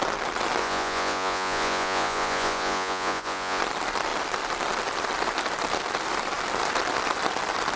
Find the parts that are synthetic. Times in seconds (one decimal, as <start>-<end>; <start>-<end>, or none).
0.6-3.6